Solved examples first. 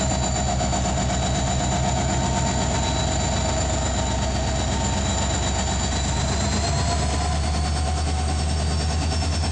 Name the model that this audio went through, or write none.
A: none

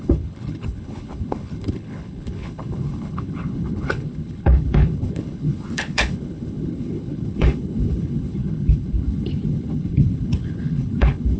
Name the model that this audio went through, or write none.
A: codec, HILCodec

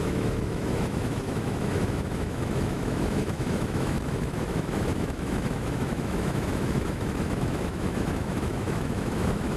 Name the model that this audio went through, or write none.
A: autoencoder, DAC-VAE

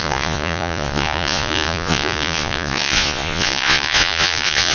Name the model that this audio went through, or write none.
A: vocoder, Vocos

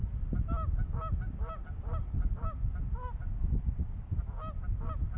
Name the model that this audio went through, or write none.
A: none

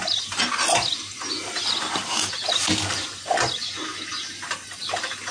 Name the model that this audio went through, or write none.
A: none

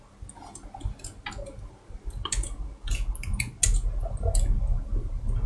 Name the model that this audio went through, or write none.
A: none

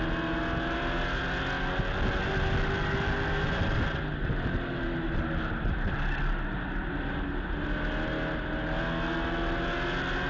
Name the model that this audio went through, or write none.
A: none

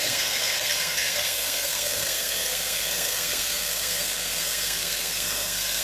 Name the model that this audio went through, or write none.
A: codec, SNAC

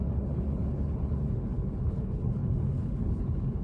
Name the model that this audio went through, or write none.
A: codec, HILCodec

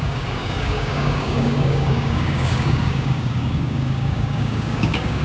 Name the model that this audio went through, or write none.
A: codec, DAC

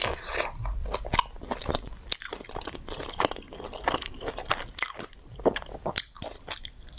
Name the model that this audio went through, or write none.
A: vocoder, BigVGAN v2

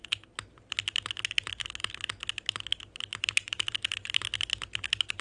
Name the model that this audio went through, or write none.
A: none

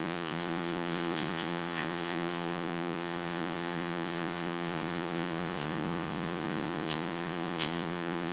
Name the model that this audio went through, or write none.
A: vocoder, Vocos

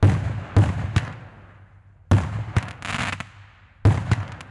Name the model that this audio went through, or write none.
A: none